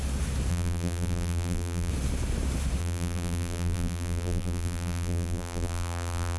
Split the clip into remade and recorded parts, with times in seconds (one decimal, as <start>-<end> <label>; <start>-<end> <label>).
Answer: 0.0-0.5 recorded; 0.5-1.9 remade; 1.9-2.8 recorded; 2.8-6.4 remade